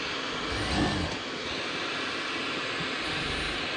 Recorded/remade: recorded